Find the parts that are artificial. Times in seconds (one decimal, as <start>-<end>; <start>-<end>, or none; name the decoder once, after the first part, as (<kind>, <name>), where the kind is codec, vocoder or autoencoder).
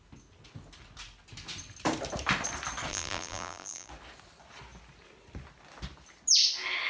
2.9-3.9 (vocoder, BigVGAN v2)